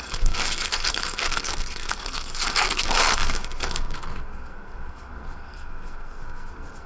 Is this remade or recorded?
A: remade